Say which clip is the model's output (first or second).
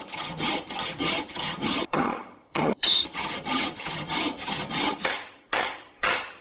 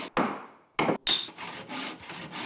first